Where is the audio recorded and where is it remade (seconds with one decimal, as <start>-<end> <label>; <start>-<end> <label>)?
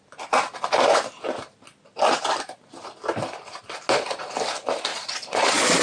0.0-4.9 recorded; 4.9-5.8 remade